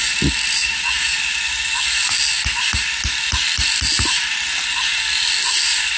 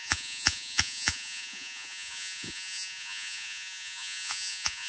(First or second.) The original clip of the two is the first